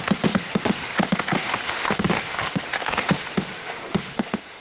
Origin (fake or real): fake